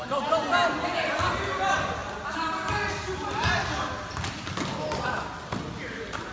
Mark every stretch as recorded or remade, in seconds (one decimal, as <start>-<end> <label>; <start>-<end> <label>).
0.0-6.3 recorded